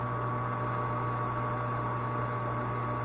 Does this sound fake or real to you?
real